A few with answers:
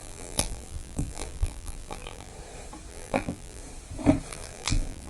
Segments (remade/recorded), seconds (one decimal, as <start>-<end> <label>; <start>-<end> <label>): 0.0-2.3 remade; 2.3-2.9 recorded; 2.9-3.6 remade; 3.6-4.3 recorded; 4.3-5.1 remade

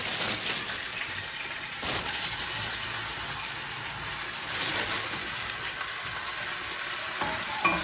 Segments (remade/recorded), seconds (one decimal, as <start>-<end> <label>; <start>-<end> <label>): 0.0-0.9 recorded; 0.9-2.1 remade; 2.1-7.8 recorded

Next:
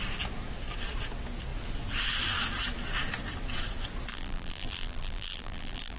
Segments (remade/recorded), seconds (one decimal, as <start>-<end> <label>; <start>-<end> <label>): 0.0-4.1 recorded; 4.1-6.0 remade

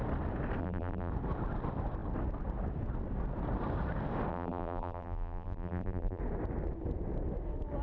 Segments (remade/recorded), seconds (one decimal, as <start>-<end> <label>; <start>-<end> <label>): 0.0-0.6 recorded; 0.6-1.1 remade; 1.1-4.3 recorded; 4.3-6.2 remade; 6.2-7.8 recorded